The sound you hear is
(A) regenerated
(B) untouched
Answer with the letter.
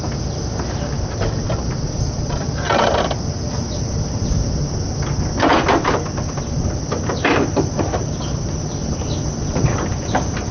B